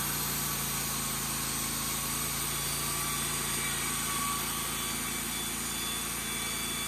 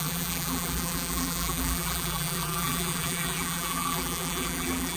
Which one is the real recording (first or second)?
first